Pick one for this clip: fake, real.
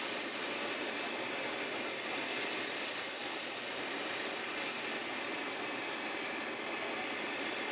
real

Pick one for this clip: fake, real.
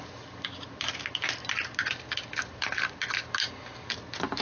real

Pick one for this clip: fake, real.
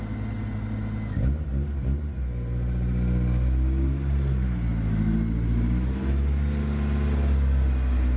real